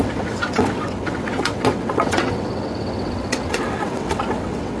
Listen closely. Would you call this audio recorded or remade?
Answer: remade